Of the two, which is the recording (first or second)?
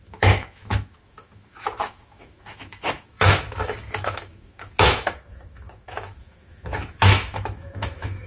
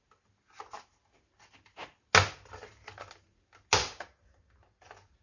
second